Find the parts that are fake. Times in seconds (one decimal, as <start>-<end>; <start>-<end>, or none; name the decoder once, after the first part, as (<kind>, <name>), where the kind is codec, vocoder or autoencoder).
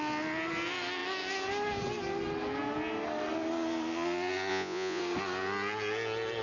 4.5-5.0 (vocoder, Vocos)